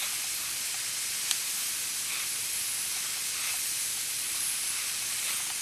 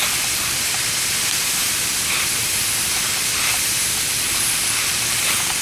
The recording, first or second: first